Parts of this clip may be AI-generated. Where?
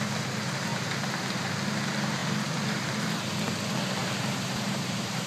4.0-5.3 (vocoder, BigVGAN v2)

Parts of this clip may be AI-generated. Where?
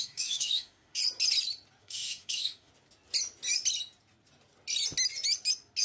0.0-1.0 (autoencoder, DAC-VAE); 1.8-2.7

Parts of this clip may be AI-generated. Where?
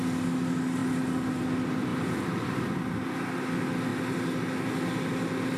1.9-2.9 (vocoder, BigVGAN v2)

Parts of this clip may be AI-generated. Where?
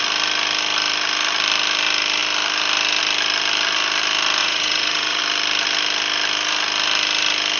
4.4-5.2 (vocoder, Vocos)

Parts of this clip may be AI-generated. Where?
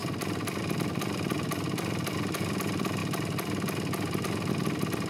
none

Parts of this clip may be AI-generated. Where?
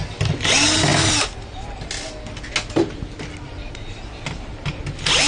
none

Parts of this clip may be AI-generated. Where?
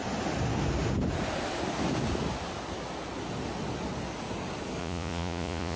4.8-5.8 (vocoder, Vocos)